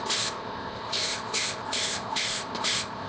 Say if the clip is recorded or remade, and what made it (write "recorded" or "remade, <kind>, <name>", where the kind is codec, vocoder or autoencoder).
remade, codec, ZipCodec